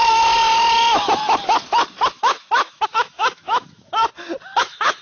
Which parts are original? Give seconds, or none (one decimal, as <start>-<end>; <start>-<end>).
1.2-2.1; 4.0-4.6